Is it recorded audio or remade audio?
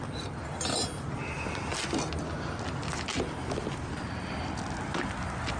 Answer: recorded